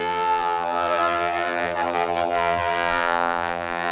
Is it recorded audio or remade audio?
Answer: remade